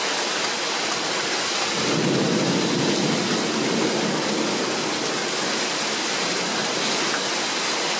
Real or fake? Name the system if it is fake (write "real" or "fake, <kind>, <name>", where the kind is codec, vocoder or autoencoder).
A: real